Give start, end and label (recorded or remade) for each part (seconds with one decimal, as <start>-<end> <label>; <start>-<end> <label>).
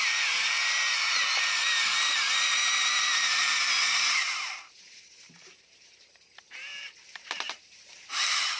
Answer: 0.0-8.6 remade